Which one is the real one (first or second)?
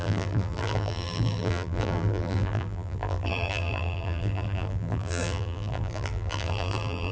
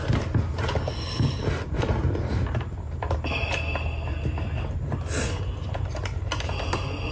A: second